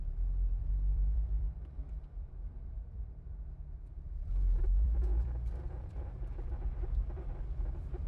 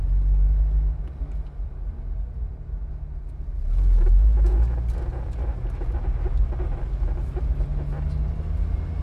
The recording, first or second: second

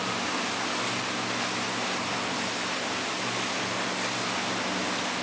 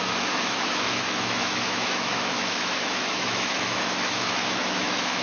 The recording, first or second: first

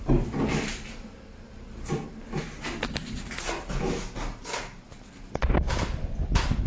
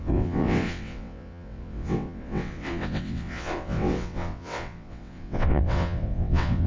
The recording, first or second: first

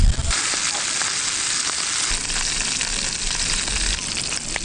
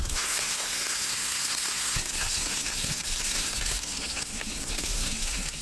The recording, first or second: first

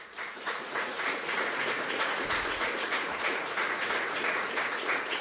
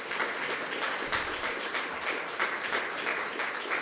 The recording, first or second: second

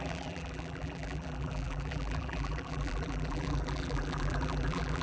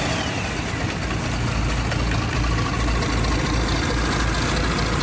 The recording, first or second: second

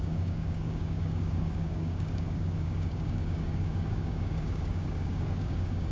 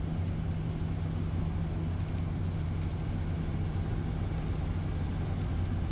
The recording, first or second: second